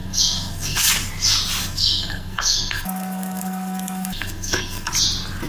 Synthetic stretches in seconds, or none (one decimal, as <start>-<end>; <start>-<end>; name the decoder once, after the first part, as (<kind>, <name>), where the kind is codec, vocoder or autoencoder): 0.0-0.9 (codec, SNAC); 1.6-4.9